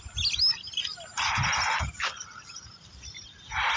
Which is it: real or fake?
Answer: real